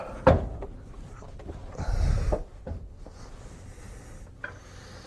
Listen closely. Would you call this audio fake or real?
real